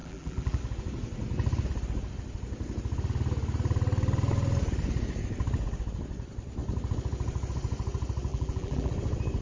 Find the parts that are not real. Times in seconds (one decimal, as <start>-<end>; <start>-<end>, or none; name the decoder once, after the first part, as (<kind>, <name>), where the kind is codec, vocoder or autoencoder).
0.0-0.6 (vocoder, BigVGAN v2); 8.3-8.9